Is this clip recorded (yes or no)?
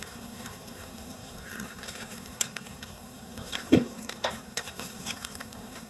no